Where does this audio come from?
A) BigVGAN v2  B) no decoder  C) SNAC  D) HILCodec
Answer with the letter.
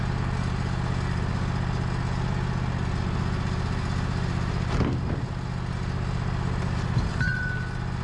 B